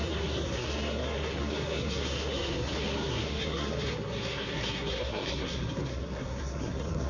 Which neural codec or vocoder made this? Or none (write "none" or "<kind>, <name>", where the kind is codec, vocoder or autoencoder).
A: codec, SNAC